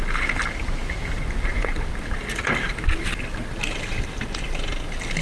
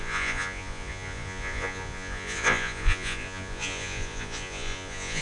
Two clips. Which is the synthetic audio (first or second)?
second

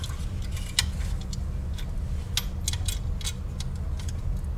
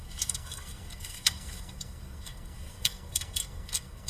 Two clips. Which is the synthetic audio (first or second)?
second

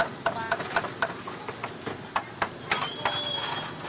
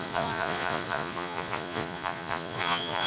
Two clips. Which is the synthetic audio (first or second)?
second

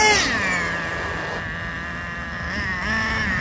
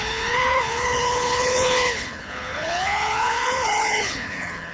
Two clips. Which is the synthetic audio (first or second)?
second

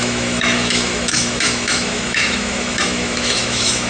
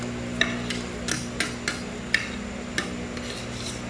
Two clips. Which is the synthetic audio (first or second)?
first